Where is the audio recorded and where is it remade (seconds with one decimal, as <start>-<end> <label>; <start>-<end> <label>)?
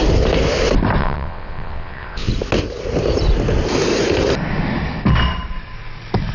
0.0-1.0 recorded; 1.0-2.3 remade; 2.3-6.3 recorded